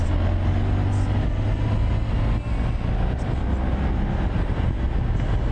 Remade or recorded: recorded